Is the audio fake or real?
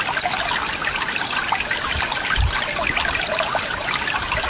real